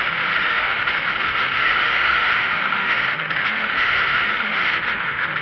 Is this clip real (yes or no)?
no